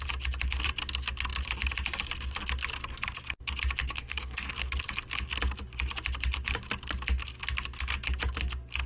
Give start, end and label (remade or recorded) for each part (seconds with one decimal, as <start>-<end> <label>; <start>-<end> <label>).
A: 0.0-3.8 recorded; 3.8-4.5 remade; 4.5-8.9 recorded